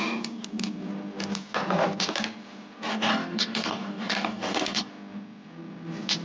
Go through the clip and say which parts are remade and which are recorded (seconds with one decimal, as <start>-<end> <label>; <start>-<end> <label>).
0.0-2.9 recorded; 2.9-4.9 remade; 4.9-6.2 recorded